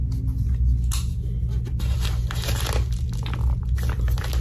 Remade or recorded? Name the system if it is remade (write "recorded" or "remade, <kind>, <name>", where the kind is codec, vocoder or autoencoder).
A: recorded